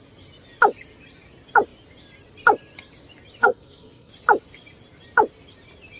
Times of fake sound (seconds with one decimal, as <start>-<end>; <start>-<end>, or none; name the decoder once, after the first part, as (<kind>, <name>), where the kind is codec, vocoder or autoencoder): 3.4-4.1 (codec, SNAC)